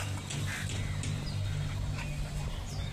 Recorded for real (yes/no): yes